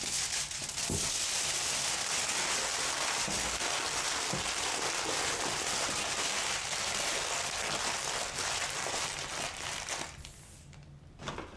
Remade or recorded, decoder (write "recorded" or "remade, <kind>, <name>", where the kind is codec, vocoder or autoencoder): recorded